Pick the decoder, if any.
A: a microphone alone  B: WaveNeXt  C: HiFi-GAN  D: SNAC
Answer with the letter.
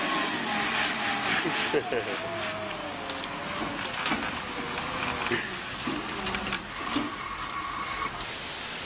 A